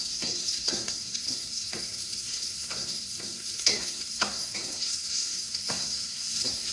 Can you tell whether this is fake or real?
fake